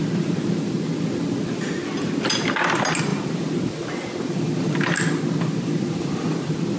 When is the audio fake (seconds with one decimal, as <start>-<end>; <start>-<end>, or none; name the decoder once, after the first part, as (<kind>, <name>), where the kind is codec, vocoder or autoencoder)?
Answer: none